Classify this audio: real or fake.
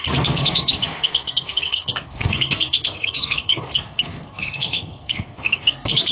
fake